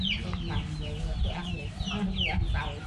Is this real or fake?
real